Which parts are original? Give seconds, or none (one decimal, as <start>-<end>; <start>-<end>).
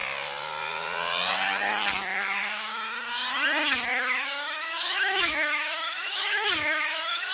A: 0.0-2.1; 2.7-3.9